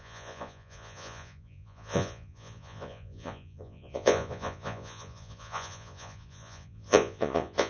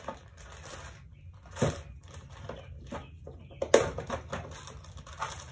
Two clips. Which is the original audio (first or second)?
second